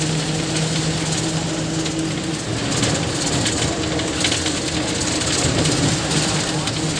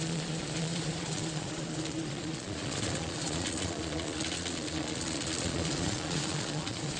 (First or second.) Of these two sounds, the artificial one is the second